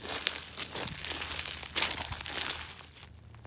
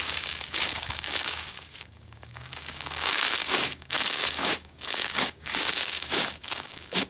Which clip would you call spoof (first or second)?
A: second